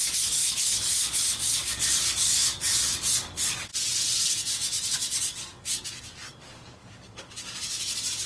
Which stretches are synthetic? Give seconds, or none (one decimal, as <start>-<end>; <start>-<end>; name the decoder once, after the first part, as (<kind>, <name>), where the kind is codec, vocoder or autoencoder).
0.0-3.7 (codec, DAC); 4.9-8.3